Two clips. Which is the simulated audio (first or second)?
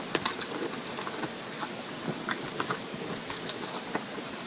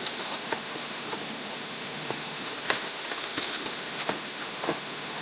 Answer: second